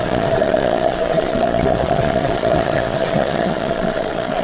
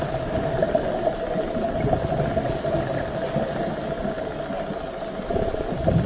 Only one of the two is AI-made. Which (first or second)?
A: first